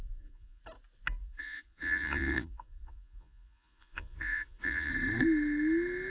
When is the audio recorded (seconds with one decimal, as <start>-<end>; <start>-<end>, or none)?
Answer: 0.6-1.2; 4.9-6.1